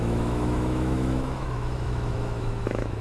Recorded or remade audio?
remade